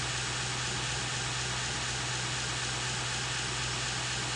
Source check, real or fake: real